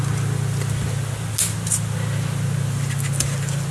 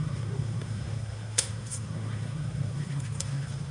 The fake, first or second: second